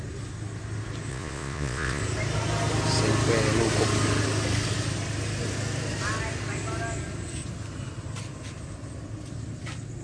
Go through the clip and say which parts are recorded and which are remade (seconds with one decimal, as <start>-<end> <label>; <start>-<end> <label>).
0.0-1.1 recorded; 1.1-2.0 remade; 2.0-10.0 recorded

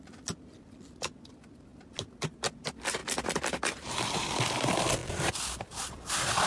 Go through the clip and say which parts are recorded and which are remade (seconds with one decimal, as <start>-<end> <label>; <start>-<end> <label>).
0.0-1.7 remade; 1.7-2.4 recorded; 2.4-3.0 remade; 3.0-3.7 recorded; 3.7-6.5 remade

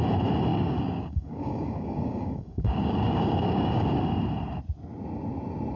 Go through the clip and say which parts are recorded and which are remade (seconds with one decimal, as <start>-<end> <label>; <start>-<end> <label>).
0.0-0.5 recorded; 0.5-4.0 remade; 4.0-5.8 recorded

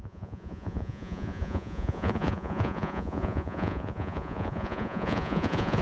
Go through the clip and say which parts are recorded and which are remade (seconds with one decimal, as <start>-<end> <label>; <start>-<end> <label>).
0.0-5.8 remade

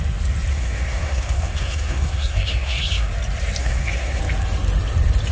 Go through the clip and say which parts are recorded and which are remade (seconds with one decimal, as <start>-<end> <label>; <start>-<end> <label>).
0.0-0.5 recorded; 0.5-3.1 remade; 3.1-3.6 recorded; 3.6-4.2 remade; 4.2-5.3 recorded